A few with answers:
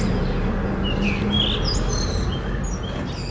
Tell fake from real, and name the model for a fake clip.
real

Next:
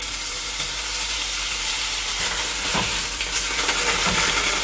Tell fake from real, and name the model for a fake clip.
fake, vocoder, BigVGAN v2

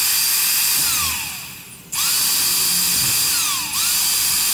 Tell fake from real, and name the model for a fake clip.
real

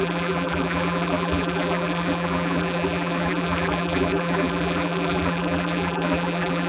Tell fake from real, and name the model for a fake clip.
fake, vocoder, BigVGAN v2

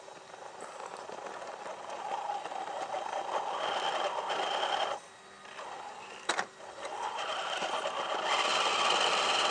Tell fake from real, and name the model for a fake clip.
real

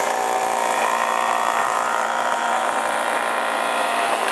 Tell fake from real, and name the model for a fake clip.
fake, vocoder, BigVGAN v2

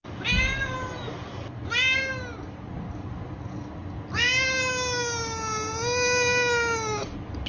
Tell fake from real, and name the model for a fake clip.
real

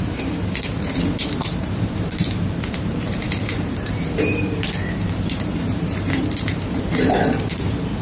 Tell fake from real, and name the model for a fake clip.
fake, vocoder, BigVGAN v2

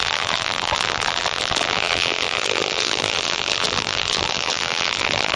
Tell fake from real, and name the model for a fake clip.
fake, vocoder, BigVGAN v2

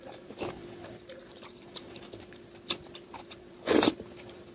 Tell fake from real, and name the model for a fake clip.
fake, vocoder, BigVGAN v2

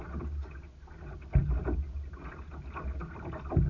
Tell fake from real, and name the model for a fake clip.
real